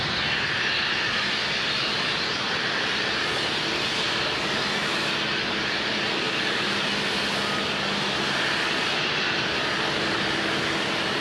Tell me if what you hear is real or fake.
real